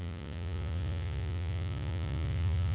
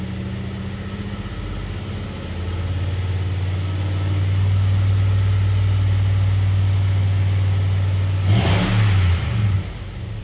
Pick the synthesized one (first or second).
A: first